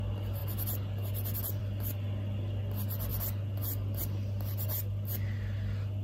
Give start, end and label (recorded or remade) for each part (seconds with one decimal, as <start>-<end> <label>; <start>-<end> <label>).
0.0-6.0 recorded